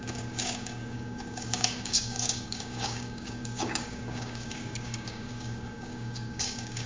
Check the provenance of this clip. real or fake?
fake